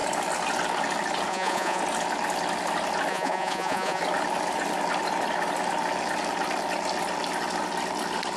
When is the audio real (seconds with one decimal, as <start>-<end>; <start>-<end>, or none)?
0.0-1.3; 1.8-3.1; 4.0-8.4